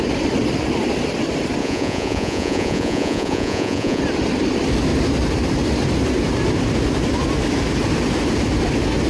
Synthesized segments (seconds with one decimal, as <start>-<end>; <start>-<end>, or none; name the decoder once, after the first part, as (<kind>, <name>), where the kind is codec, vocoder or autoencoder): 1.6-4.0 (vocoder, Vocos)